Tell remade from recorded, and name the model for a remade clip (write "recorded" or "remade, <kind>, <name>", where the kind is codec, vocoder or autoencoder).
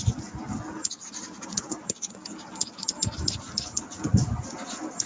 recorded